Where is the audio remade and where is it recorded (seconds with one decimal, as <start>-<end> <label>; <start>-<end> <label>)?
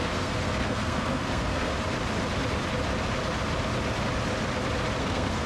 0.0-1.7 remade; 1.7-5.0 recorded; 5.0-5.5 remade